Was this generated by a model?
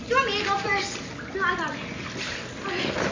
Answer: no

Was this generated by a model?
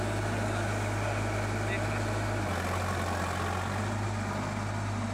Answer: no